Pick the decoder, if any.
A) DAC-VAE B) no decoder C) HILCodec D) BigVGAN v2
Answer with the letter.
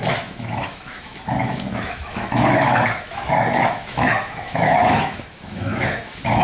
A